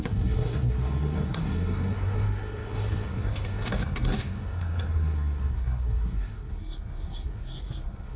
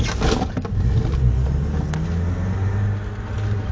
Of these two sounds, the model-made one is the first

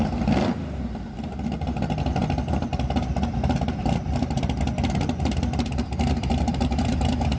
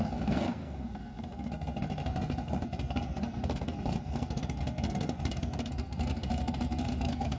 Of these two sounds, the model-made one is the second